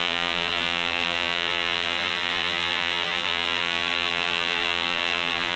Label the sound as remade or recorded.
remade